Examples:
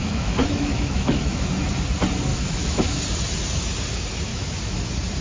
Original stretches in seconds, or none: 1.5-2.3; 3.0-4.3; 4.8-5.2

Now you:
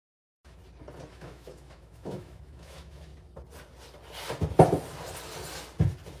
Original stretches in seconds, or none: 0.6-1.1; 3.1-6.2

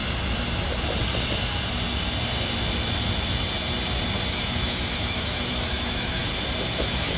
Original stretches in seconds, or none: 0.0-4.3; 6.2-6.8

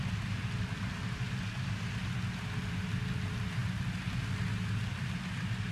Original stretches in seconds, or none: 0.0-5.7

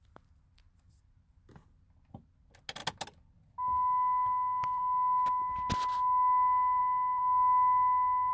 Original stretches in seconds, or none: 0.0-8.3

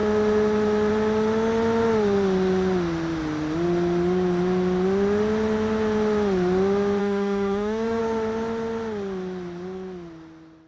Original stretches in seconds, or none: 0.0-7.0; 8.0-10.7

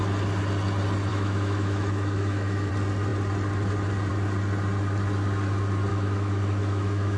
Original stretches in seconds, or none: 0.0-1.1; 2.7-5.9

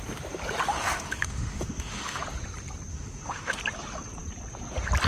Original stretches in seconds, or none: 0.0-0.7; 2.2-2.9; 3.6-5.1